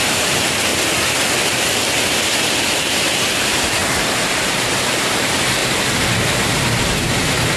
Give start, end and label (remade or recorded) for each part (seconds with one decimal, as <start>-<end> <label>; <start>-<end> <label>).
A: 0.0-0.7 remade; 0.7-2.6 recorded; 2.6-5.6 remade; 5.6-6.3 recorded; 6.3-7.6 remade